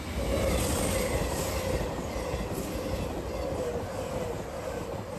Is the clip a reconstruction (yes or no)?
no